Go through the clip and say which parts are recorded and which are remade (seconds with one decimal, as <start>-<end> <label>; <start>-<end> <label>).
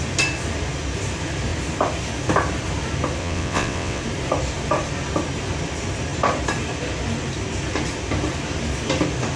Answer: 0.0-3.2 recorded; 3.2-4.0 remade; 4.0-9.4 recorded